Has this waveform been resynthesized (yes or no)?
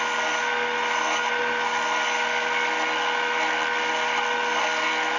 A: no